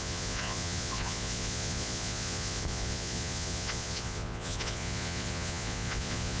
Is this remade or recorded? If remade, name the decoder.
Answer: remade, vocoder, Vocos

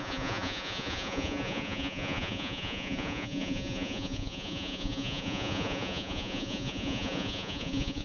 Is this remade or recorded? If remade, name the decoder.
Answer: remade, vocoder, Vocos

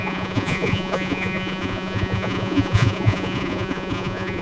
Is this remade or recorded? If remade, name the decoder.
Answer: remade, vocoder, Vocos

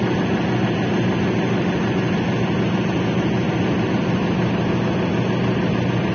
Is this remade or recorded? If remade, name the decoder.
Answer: recorded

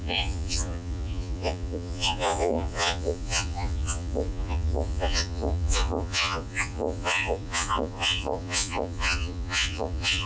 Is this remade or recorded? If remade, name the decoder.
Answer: remade, vocoder, Vocos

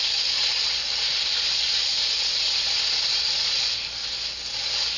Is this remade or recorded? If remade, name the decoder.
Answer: recorded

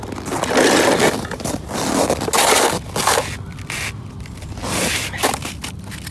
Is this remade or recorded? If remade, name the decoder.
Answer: recorded